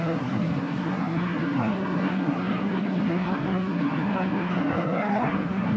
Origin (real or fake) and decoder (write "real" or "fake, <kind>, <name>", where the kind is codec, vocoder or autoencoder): fake, codec, SNAC